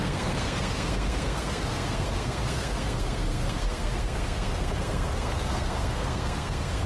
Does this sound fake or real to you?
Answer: fake